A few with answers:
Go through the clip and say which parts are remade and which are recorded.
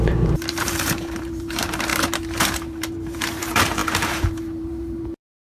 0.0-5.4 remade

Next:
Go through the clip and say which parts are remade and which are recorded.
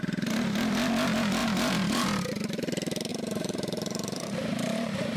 0.0-1.4 recorded; 1.4-2.2 remade; 2.2-3.1 recorded; 3.1-5.2 remade